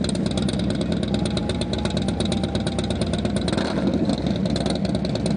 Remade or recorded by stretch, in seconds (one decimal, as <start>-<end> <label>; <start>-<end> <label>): 0.0-5.4 recorded

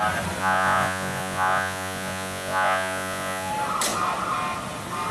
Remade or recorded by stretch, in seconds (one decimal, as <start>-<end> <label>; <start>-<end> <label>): 0.0-0.4 recorded; 0.4-3.5 remade; 3.5-5.1 recorded

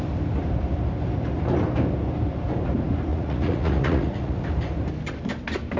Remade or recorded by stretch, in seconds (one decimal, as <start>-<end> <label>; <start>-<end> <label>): 0.0-3.1 recorded; 3.1-4.4 remade; 4.4-5.8 recorded

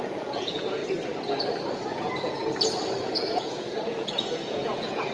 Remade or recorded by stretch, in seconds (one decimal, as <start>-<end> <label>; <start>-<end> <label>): 0.0-0.8 remade; 0.8-1.7 recorded; 1.7-2.4 remade; 2.4-3.0 recorded; 3.0-5.1 remade